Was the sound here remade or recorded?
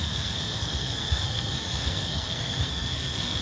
remade